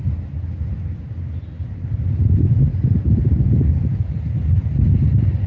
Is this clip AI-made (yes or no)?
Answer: no